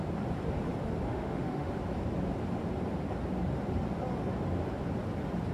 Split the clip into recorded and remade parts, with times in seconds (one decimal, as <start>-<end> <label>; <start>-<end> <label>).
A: 0.0-1.1 recorded; 1.1-1.7 remade; 1.7-5.5 recorded